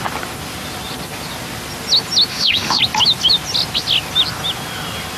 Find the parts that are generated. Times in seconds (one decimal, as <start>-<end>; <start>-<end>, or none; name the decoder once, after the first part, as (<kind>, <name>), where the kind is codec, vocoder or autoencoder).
2.3-2.8 (autoencoder, DAC-VAE)